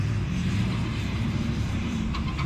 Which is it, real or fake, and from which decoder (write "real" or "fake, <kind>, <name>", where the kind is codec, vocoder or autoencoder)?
fake, vocoder, BigVGAN v2